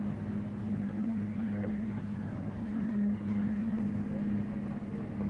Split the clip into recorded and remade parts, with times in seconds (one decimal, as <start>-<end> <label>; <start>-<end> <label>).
0.0-0.6 recorded; 0.6-3.8 remade; 3.8-5.3 recorded